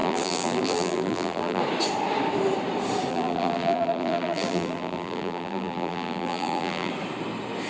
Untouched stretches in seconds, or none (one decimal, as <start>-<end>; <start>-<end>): 1.6-3.1; 6.9-7.7